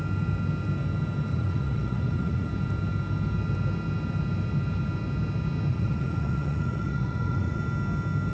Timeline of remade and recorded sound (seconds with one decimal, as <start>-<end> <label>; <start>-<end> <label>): 0.0-1.3 recorded; 1.3-2.5 remade; 2.5-5.7 recorded; 5.7-7.6 remade; 7.6-8.3 recorded